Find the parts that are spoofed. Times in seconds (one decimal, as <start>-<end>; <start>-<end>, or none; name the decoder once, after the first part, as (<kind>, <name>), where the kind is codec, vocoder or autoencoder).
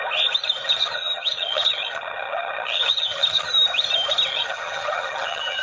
0.6-3.5 (vocoder, HiFi-GAN); 4.3-5.6